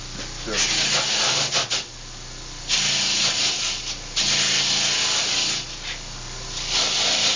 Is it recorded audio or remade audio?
recorded